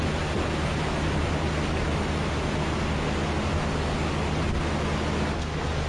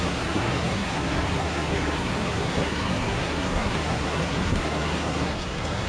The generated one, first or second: second